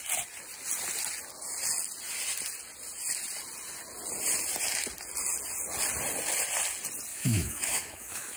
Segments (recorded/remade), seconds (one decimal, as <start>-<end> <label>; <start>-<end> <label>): 0.0-7.1 recorded; 7.1-8.4 remade